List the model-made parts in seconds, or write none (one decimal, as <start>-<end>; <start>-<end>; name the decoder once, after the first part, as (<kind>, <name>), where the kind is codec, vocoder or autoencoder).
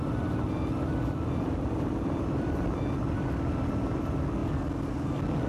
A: none